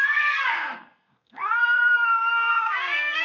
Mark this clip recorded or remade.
remade